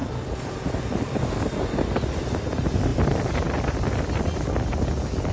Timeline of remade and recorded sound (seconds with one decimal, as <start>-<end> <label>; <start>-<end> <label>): 0.0-5.3 recorded